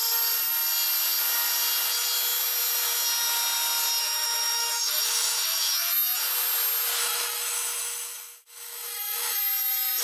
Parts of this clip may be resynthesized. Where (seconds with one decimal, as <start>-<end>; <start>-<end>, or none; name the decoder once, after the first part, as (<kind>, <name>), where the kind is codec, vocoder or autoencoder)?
4.0-6.2 (autoencoder, DAC-VAE); 7.0-10.0